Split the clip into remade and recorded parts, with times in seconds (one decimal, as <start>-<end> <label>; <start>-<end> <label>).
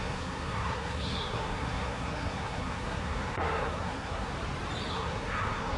0.0-4.3 remade; 4.3-4.9 recorded; 4.9-5.8 remade